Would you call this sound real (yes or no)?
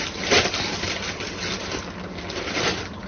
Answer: yes